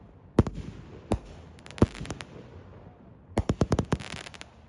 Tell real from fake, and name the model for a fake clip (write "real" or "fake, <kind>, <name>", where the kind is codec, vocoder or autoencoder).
real